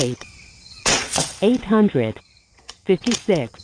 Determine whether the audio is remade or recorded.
remade